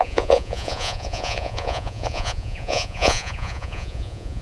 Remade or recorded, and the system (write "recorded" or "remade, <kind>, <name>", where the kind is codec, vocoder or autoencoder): remade, vocoder, Vocos